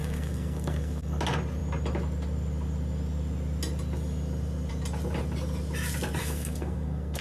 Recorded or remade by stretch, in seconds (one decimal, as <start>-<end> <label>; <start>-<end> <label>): 0.0-1.2 remade; 1.2-6.2 recorded; 6.2-7.2 remade